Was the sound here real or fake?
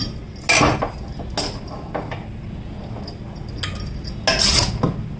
real